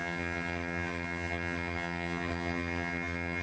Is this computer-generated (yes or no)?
yes